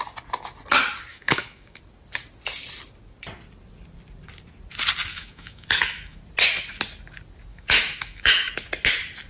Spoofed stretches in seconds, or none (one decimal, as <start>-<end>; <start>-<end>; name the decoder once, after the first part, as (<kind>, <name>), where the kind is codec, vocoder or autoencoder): 1.1-1.8 (autoencoder, DAC-VAE); 5.1-6.2; 7.5-8.5

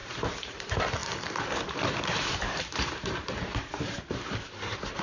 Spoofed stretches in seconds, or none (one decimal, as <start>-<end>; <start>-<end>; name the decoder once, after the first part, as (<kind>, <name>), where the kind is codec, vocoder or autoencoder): 0.0-0.6 (vocoder, BigVGAN v2); 1.0-4.0

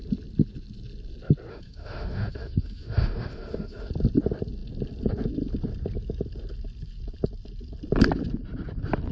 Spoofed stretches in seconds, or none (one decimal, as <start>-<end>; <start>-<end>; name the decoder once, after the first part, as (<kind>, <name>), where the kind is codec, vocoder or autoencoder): 1.5-3.9 (autoencoder, DAC-VAE)

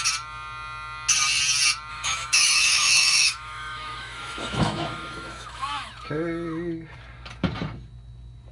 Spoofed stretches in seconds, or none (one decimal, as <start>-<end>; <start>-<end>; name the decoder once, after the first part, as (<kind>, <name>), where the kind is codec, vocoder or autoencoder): 1.9-5.9 (autoencoder, DAC-VAE)

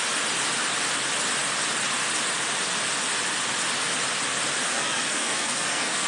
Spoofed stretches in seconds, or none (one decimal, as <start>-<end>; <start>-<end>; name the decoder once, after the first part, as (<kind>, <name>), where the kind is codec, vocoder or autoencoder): 4.7-6.1 (codec, SNAC)

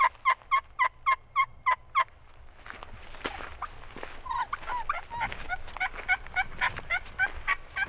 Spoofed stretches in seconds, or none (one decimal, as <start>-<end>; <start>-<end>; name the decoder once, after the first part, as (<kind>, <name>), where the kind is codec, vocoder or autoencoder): none